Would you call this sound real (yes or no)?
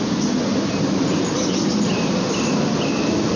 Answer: yes